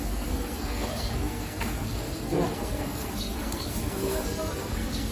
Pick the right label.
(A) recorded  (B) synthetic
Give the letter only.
B